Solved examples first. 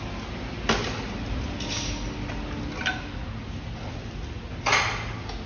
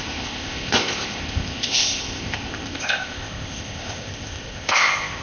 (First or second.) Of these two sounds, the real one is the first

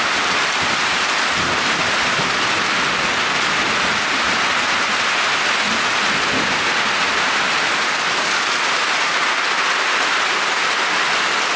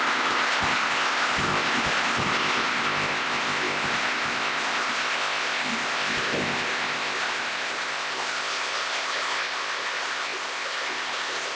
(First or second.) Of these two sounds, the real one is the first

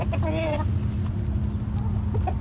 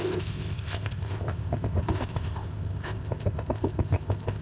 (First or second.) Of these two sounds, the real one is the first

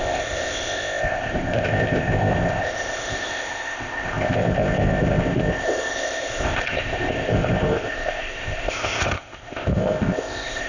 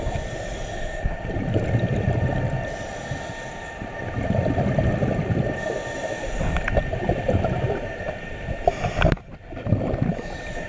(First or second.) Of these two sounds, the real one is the second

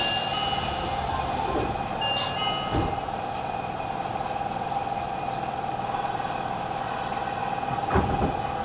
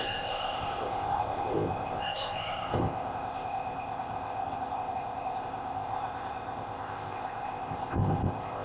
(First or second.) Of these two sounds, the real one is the first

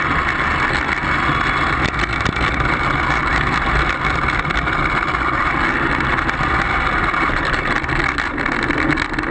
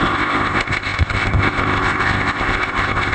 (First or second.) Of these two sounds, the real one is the first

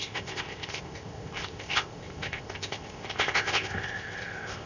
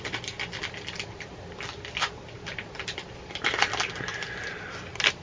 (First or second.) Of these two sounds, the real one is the second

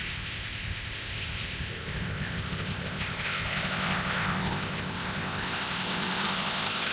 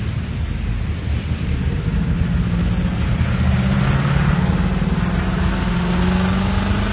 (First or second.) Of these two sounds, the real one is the second